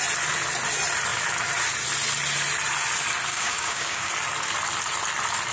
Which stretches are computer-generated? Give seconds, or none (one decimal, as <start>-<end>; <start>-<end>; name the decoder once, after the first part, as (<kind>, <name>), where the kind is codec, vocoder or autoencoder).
3.3-4.1 (codec, DAC)